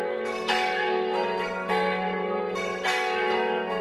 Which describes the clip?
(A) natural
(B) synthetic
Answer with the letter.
B